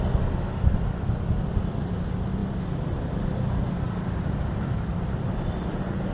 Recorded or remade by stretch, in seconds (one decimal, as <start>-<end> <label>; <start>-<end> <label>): 0.0-6.1 recorded

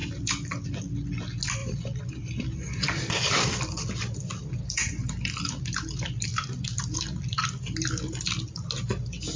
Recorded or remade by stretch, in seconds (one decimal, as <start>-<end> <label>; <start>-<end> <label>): 0.0-0.7 remade; 0.7-1.6 recorded; 1.6-5.3 remade; 5.3-6.3 recorded; 6.3-7.6 remade; 7.6-9.4 recorded

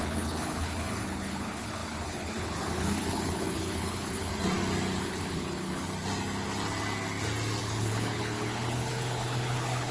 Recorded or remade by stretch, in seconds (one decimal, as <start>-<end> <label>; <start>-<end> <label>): 0.0-4.3 remade; 4.3-5.0 recorded; 5.0-5.9 remade; 5.9-7.6 recorded; 7.6-9.9 remade

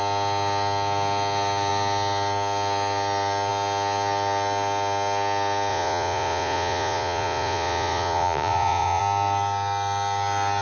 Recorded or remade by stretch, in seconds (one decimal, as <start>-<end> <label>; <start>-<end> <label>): 0.0-5.7 recorded; 5.7-9.0 remade; 9.0-10.6 recorded

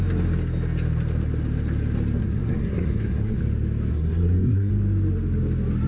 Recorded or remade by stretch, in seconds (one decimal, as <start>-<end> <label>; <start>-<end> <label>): 0.0-2.2 recorded; 2.2-3.4 remade; 3.4-3.9 recorded; 3.9-4.7 remade; 4.7-5.9 recorded

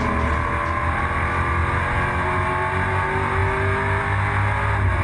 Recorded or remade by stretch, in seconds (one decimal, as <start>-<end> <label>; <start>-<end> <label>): 0.0-5.0 recorded